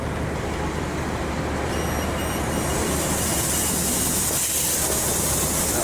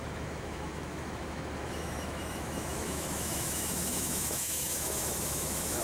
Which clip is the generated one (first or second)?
second